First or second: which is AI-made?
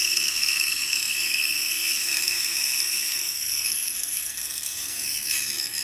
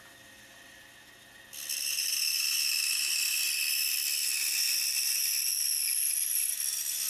first